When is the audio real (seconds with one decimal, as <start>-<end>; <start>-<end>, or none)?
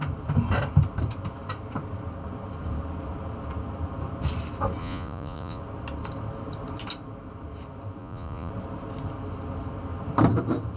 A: 0.0-4.8; 5.6-8.0; 8.5-10.8